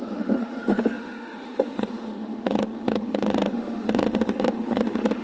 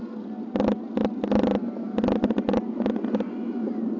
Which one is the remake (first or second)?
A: first